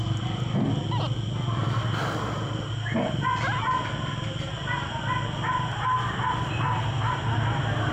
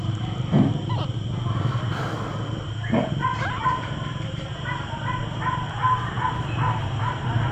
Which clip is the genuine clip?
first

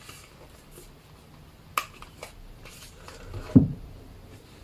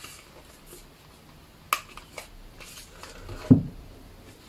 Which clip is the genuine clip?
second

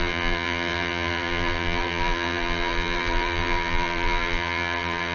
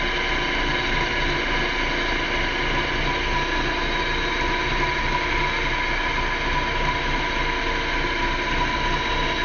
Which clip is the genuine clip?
second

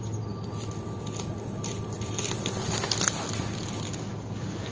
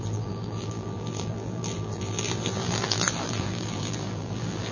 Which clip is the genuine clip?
first